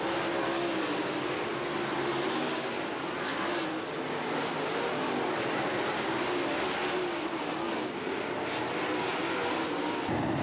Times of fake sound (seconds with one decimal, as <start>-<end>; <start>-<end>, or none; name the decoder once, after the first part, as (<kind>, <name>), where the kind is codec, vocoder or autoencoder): none